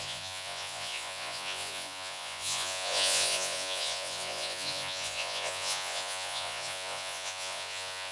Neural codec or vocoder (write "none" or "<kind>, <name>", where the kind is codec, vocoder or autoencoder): vocoder, Vocos